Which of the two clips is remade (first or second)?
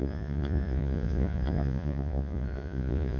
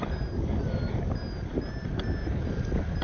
first